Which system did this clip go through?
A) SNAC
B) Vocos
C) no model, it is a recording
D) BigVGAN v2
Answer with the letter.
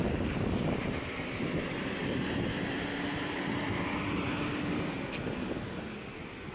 D